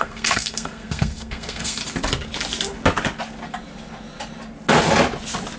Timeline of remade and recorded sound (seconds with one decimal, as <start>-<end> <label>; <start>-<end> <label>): 0.0-1.8 remade; 1.8-5.6 recorded